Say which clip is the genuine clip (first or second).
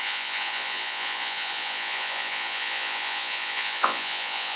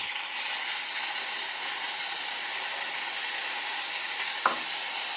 second